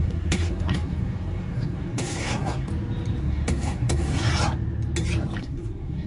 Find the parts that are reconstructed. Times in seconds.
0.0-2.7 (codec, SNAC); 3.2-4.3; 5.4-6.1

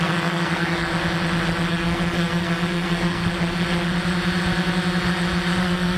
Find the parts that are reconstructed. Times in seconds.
0.0-0.9 (codec, SNAC); 1.7-3.2; 5.6-6.0

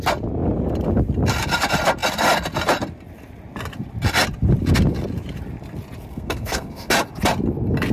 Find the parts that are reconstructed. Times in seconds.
6.1-6.9 (codec, SNAC)

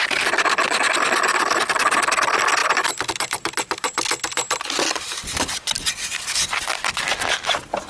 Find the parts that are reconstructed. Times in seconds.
none

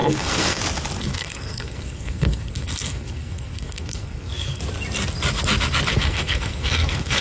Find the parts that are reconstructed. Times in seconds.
0.0-0.6 (codec, SNAC); 1.0-4.6; 5.9-7.2

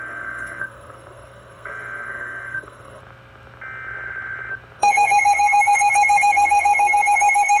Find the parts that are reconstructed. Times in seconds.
0.0-3.0 (codec, SNAC); 4.8-7.6